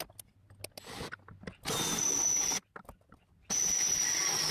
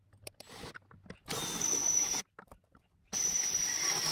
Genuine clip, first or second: first